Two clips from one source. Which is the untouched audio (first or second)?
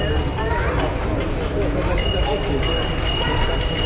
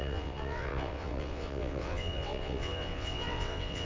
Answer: first